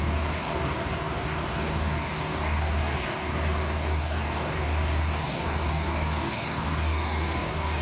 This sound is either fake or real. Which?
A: fake